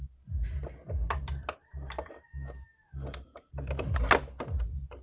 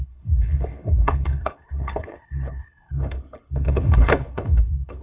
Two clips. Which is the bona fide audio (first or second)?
first